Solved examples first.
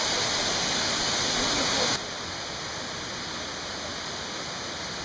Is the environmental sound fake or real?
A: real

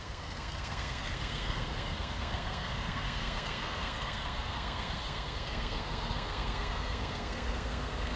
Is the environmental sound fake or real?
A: fake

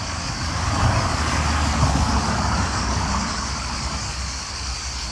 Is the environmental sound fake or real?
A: fake